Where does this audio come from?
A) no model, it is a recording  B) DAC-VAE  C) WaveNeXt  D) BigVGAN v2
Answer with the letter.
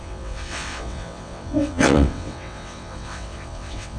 C